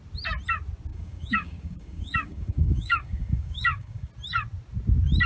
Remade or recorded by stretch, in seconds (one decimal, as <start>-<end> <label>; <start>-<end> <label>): 0.0-0.9 recorded; 0.9-4.1 remade; 4.1-5.3 recorded